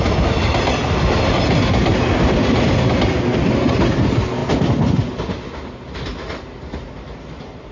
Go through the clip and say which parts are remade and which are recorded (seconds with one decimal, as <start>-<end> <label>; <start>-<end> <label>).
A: 0.0-7.7 recorded

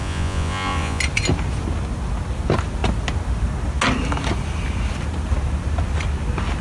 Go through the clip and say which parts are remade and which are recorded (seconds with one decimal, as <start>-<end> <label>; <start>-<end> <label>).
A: 0.0-1.0 remade; 1.0-6.6 recorded

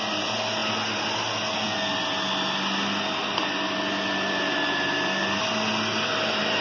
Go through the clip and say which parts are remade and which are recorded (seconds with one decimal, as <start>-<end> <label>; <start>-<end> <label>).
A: 0.0-6.6 recorded